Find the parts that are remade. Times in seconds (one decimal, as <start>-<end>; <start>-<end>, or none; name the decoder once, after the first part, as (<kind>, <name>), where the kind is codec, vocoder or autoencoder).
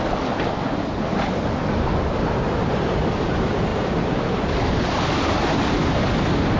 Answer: none